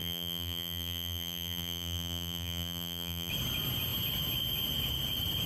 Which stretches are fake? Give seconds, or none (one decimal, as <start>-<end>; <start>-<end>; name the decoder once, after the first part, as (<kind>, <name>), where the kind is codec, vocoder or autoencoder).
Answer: 0.0-3.3 (vocoder, BigVGAN v2)